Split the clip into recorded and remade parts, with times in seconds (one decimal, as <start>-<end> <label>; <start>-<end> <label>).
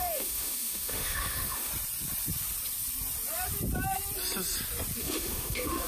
0.0-1.7 remade; 1.7-5.0 recorded; 5.0-5.9 remade